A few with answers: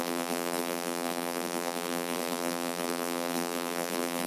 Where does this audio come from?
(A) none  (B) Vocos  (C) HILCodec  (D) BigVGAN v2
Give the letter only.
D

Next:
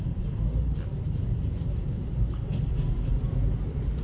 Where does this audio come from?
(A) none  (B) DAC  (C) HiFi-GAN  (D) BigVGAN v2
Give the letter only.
A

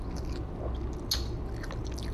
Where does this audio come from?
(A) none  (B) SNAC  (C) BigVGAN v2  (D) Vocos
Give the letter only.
A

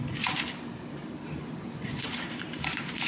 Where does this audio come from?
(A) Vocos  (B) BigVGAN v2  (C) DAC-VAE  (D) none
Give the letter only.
B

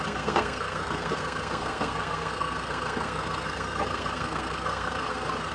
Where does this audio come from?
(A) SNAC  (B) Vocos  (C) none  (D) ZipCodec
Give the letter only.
A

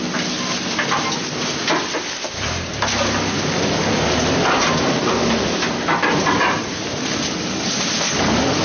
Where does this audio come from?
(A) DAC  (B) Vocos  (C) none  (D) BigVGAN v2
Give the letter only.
C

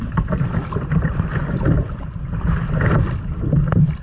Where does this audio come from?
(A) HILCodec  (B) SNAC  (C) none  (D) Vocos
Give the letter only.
C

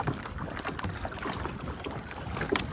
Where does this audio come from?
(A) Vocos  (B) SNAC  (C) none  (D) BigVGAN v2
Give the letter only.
C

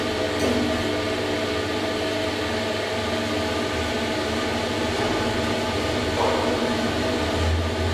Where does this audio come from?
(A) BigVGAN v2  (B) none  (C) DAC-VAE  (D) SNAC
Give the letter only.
B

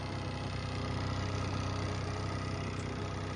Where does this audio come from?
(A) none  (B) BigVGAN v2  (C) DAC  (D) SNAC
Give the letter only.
A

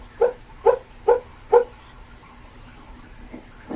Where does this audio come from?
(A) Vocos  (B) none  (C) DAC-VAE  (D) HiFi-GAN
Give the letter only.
B